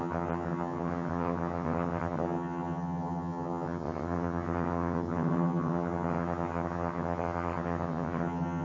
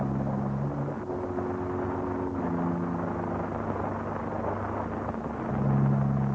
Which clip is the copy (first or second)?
first